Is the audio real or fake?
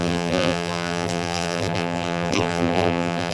fake